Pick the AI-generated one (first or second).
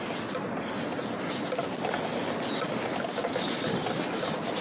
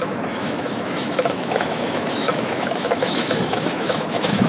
second